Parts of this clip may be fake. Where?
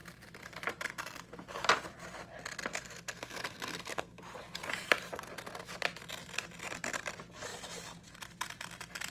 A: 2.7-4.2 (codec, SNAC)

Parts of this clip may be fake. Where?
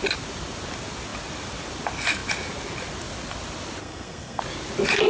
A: 3.8-4.4 (codec, SNAC)